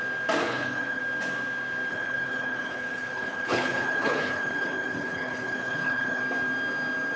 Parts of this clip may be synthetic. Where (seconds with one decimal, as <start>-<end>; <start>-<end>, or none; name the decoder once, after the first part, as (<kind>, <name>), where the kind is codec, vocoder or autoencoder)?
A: 0.4-1.0 (codec, HILCodec); 1.9-6.2